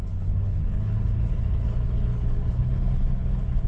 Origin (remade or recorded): remade